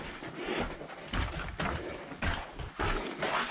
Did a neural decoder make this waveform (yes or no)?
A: no